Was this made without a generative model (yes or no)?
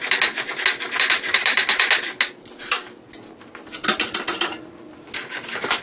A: yes